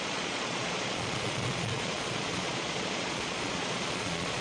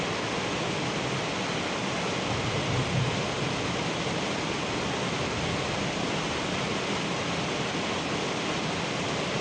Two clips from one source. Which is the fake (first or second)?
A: first